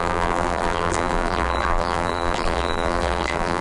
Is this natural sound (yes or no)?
no